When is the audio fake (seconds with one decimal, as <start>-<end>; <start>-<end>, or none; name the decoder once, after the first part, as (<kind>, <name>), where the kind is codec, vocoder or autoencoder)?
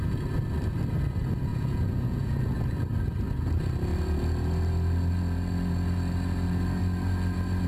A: 1.5-2.4 (vocoder, Vocos)